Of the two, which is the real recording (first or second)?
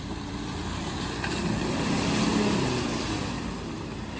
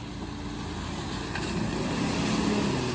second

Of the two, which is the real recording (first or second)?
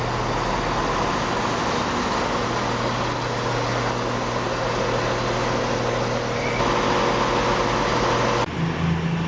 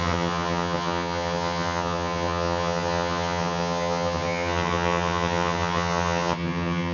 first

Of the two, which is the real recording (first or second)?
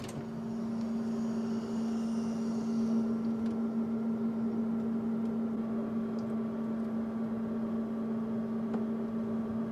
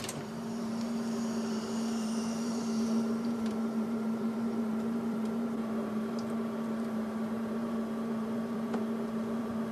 first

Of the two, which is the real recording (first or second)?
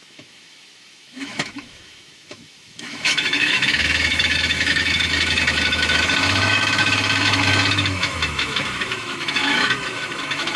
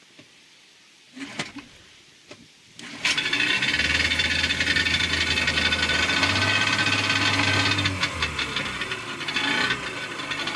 second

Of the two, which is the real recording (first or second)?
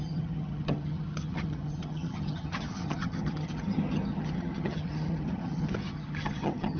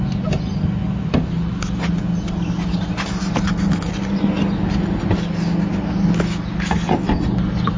second